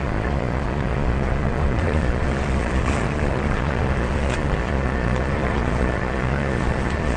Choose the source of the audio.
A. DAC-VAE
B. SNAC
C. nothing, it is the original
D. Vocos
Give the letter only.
D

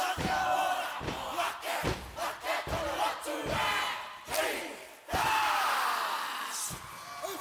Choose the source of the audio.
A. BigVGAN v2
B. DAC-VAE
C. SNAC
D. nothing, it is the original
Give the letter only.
D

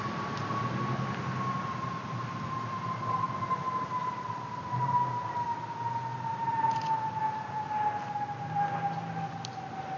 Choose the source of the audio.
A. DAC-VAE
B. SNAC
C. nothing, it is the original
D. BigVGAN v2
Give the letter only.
C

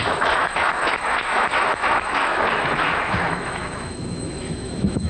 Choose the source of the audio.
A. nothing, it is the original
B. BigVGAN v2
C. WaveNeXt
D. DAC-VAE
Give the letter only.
D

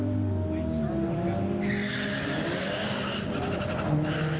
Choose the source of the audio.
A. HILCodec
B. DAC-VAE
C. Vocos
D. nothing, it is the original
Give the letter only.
D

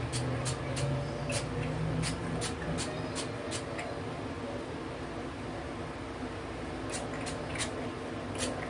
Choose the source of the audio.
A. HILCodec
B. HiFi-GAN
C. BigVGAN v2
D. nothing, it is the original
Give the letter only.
D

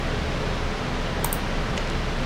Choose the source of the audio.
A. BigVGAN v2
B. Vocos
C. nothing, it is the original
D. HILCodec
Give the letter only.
C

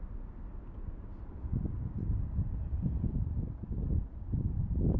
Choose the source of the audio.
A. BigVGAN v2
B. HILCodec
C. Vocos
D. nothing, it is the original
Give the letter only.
D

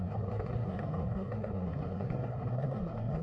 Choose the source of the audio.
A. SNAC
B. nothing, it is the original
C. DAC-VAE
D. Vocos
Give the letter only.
A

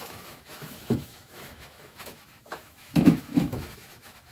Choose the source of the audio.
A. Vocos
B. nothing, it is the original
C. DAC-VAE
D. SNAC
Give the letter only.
C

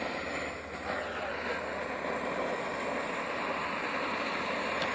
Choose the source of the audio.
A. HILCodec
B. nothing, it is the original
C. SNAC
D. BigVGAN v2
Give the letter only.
B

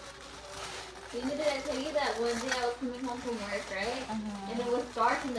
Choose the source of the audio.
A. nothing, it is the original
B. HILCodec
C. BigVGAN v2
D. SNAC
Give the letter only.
A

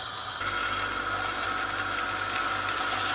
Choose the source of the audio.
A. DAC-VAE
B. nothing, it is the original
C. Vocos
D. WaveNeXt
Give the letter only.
B